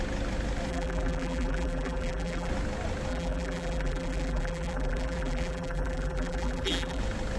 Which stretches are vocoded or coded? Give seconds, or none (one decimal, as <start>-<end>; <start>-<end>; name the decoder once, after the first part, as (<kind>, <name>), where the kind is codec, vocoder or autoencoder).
0.7-2.5 (vocoder, BigVGAN v2); 3.1-7.0